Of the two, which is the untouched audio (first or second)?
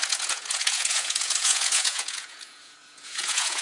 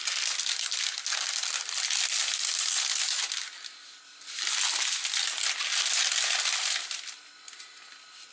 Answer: second